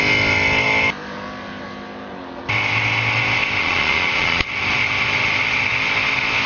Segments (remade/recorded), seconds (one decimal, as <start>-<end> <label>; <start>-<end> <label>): 0.0-3.6 recorded; 3.6-4.4 remade; 4.4-6.5 recorded